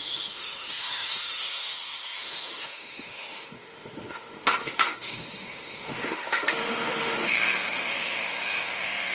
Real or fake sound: fake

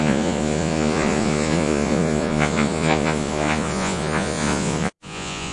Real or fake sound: fake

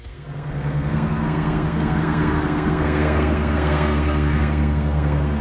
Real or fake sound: fake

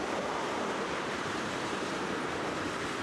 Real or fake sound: fake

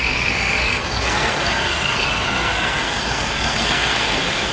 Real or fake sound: fake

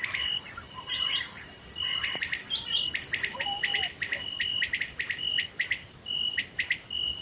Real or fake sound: real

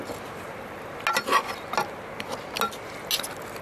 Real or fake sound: real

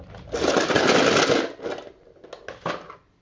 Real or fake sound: real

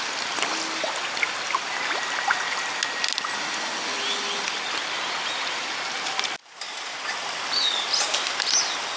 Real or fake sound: real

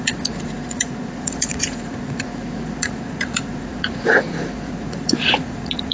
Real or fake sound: fake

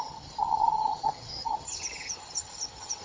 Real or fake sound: fake